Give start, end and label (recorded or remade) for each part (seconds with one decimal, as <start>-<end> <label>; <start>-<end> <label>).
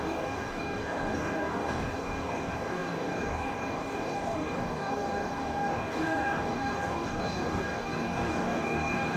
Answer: 0.0-9.2 remade